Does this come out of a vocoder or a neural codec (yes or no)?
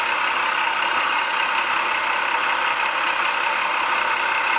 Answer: no